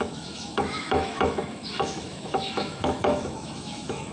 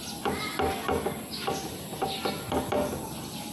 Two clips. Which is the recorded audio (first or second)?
second